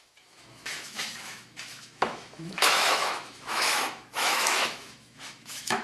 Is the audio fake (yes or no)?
yes